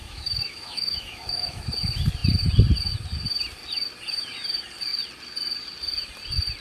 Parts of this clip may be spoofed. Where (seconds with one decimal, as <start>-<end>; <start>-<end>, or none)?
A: 0.0-1.6